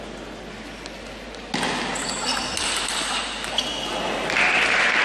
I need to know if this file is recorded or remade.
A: recorded